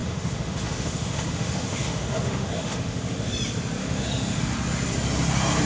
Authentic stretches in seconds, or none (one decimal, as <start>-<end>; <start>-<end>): 3.3-3.8; 4.4-5.7